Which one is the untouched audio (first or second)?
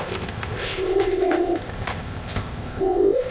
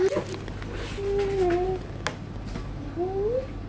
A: second